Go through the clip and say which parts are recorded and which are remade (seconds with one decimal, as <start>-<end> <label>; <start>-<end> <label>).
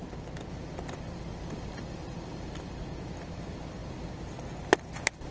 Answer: 0.0-5.3 recorded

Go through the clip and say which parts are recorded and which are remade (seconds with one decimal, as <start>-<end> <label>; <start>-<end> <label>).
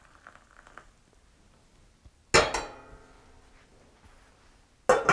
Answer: 0.0-5.1 recorded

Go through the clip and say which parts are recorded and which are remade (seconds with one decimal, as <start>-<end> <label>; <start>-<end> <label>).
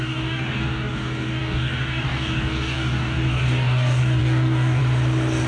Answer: 0.0-4.8 remade; 4.8-5.5 recorded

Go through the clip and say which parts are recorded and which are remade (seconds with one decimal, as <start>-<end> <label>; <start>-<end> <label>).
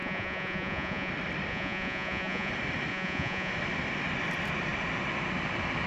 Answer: 0.0-1.1 remade; 1.1-1.5 recorded; 1.5-2.5 remade; 2.5-2.9 recorded; 2.9-3.5 remade; 3.5-5.9 recorded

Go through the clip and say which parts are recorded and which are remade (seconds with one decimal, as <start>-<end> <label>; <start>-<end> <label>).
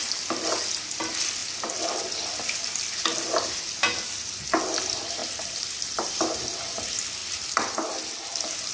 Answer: 0.0-5.2 recorded; 5.2-6.6 remade; 6.6-7.2 recorded; 7.2-8.0 remade; 8.0-8.7 recorded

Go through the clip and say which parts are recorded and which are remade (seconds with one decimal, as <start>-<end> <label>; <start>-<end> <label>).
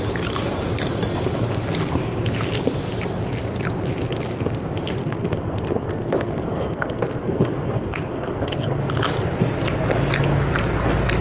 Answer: 0.0-5.0 recorded; 5.0-8.8 remade; 8.8-11.2 recorded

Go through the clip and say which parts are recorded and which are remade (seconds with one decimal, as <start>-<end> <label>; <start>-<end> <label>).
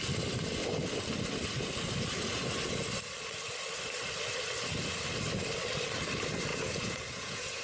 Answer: 0.0-6.5 recorded; 6.5-7.6 remade